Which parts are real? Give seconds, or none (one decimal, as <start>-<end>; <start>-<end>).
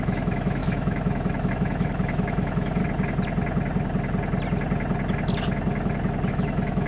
2.8-6.3